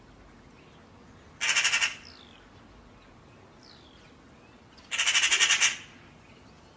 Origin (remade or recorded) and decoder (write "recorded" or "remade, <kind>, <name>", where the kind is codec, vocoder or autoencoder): recorded